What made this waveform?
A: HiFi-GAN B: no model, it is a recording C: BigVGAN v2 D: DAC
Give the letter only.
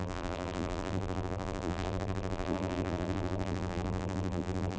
C